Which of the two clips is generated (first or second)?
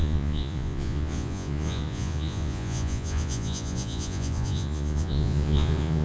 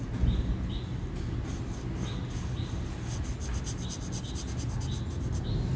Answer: first